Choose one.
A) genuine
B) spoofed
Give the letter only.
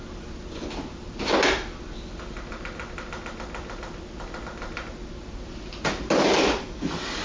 A